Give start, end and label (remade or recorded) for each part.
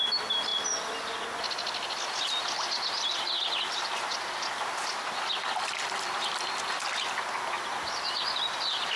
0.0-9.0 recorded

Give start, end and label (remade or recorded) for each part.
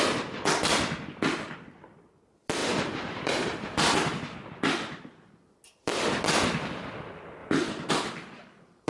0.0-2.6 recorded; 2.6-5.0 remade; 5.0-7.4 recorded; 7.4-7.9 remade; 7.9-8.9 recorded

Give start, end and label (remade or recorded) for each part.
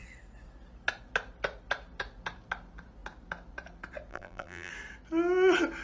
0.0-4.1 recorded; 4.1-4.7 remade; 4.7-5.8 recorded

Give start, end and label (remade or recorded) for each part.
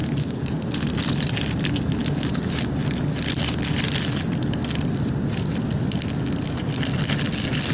0.0-0.6 remade; 0.6-7.7 recorded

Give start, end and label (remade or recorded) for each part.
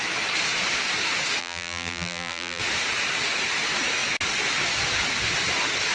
0.0-1.4 recorded; 1.4-2.6 remade; 2.6-5.9 recorded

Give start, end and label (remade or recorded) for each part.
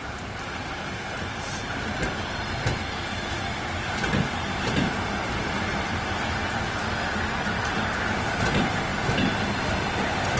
0.0-10.4 recorded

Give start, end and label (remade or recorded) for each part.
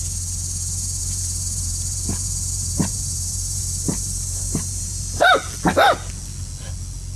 0.0-1.0 recorded; 1.0-5.3 remade; 5.3-7.2 recorded